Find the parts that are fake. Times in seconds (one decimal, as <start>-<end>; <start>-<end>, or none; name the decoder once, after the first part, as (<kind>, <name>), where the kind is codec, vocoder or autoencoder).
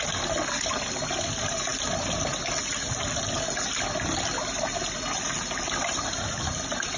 none